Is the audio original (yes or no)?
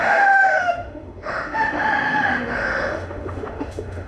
no